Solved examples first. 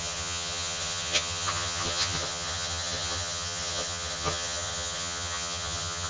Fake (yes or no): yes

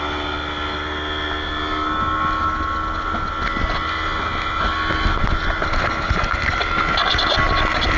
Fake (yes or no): no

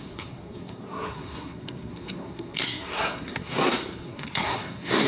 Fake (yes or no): yes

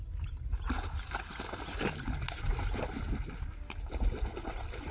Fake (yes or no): no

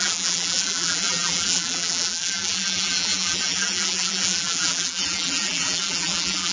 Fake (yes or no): yes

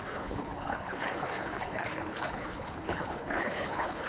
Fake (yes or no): yes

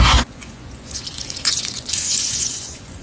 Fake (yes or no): yes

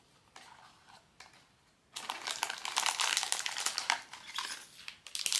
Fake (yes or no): no